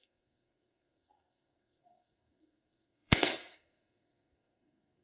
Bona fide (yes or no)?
no